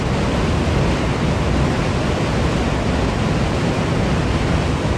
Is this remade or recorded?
recorded